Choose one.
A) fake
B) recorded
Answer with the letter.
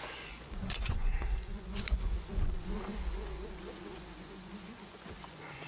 A